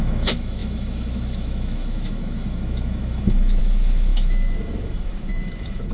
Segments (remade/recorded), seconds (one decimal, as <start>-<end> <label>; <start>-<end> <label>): 0.0-5.9 remade